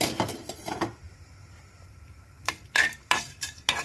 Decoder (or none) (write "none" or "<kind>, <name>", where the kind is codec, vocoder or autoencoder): vocoder, BigVGAN v2